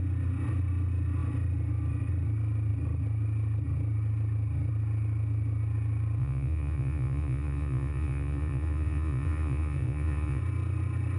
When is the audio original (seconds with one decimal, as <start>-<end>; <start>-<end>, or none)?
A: 0.0-6.2; 10.4-11.2